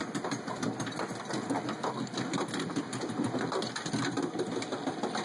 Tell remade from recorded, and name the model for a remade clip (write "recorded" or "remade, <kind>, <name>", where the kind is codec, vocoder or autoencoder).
recorded